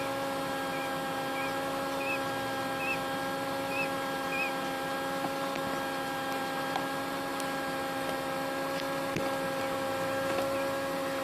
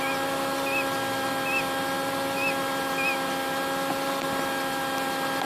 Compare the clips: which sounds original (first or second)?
second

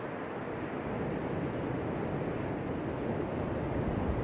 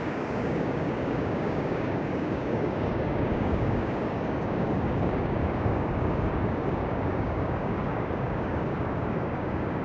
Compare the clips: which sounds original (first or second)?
first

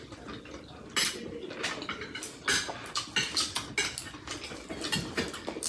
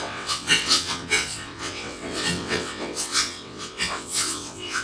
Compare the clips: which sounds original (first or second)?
first